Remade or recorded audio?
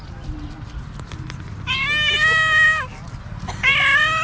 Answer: recorded